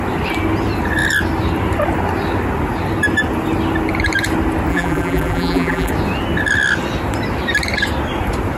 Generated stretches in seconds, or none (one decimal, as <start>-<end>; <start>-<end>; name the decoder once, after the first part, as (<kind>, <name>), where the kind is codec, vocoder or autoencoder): 4.7-5.9 (vocoder, BigVGAN v2)